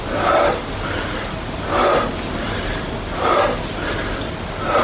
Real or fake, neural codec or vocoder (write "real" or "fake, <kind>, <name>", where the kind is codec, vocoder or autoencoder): real